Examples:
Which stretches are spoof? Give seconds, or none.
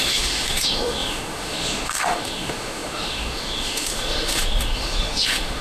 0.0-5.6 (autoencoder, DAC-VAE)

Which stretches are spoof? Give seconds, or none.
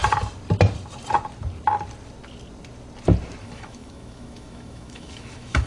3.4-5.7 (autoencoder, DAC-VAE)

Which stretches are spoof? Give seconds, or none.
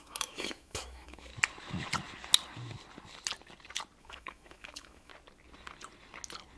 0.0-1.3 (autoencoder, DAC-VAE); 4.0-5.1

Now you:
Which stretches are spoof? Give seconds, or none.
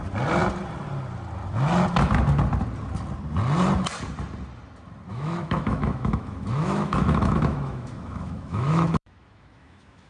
5.1-10.1 (autoencoder, DAC-VAE)